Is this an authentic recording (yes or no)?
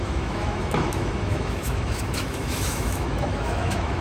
no